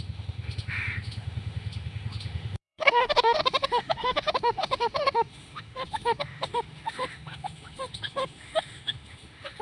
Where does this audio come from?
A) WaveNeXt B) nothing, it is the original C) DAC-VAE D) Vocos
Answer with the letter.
C